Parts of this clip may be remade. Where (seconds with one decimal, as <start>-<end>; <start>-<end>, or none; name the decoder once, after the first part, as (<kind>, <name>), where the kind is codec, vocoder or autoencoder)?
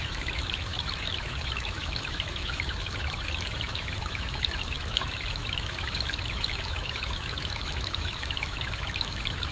0.0-9.5 (autoencoder, DAC-VAE)